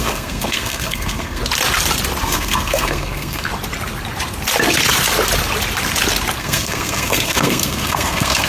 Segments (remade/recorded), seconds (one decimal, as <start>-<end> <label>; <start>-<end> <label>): 0.0-1.4 remade; 1.4-2.2 recorded; 2.2-3.5 remade; 3.5-6.4 recorded; 6.4-8.5 remade